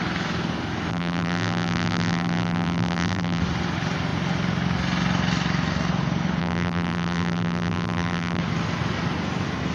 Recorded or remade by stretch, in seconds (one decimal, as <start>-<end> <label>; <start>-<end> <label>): 0.0-0.9 recorded; 0.9-3.4 remade; 3.4-6.4 recorded; 6.4-8.4 remade; 8.4-9.7 recorded